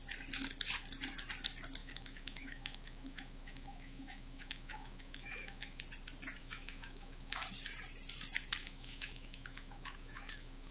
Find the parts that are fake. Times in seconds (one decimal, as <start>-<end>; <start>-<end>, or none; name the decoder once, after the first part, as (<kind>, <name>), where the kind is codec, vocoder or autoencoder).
1.8-5.8 (autoencoder, DAC-VAE); 6.4-7.4; 8.6-10.7